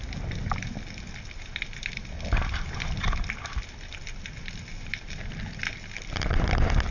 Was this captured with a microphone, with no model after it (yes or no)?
yes